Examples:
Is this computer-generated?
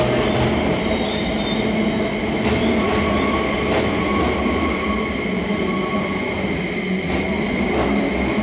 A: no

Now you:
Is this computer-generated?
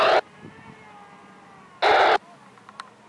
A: no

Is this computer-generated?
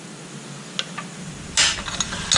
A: no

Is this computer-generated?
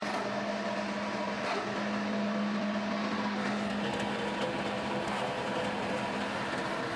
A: no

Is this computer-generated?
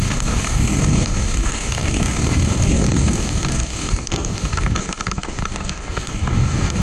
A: yes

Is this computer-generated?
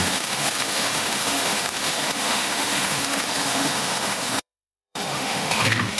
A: yes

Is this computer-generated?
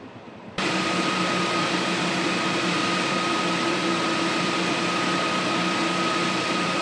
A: yes